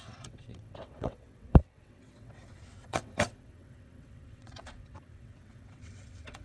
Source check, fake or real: fake